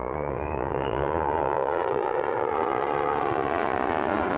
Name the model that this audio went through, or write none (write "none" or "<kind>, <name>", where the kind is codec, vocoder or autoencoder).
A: vocoder, Vocos